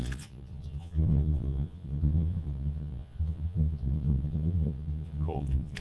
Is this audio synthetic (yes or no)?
yes